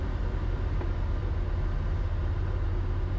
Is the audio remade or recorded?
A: recorded